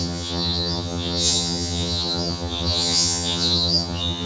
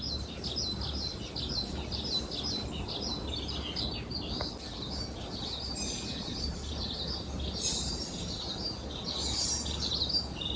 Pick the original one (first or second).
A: second